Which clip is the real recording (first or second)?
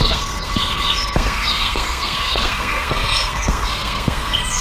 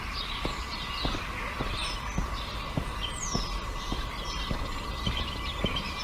second